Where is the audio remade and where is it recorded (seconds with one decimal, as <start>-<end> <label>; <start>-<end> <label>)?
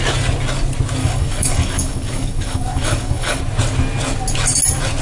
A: 0.0-1.0 recorded; 1.0-3.4 remade; 3.4-5.0 recorded